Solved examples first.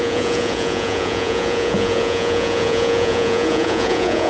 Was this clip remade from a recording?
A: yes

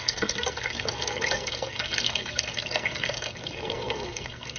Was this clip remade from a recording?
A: yes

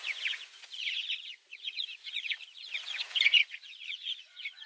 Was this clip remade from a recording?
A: yes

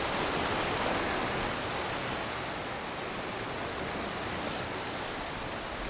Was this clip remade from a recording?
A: no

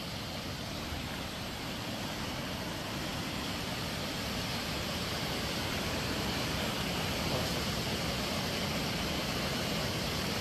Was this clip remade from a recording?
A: yes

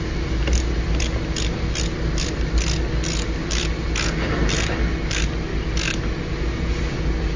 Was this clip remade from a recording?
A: no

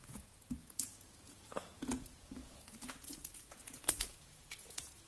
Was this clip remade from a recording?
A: yes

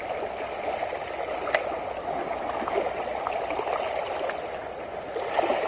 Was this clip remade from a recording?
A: no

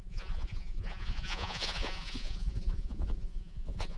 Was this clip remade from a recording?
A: yes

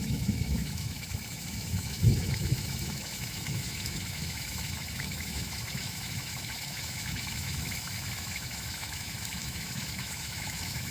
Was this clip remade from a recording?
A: yes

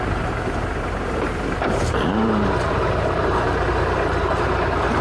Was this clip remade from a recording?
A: yes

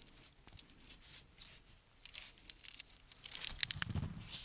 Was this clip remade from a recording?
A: no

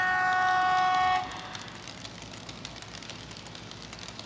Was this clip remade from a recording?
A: no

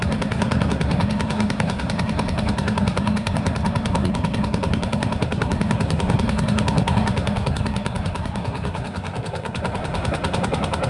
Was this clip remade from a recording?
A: yes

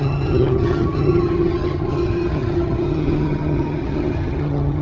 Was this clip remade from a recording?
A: yes